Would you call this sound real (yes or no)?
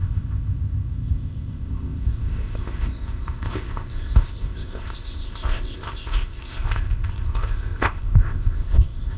no